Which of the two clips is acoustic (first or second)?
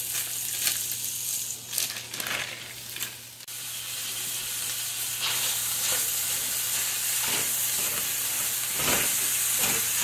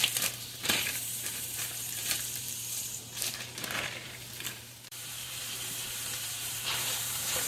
first